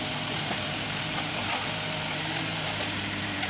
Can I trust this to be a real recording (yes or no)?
no